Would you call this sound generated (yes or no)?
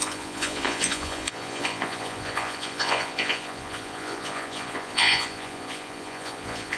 yes